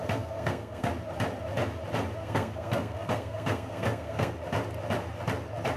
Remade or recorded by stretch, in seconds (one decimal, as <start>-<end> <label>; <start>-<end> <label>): 0.0-0.9 remade; 0.9-2.2 recorded; 2.2-4.3 remade; 4.3-5.8 recorded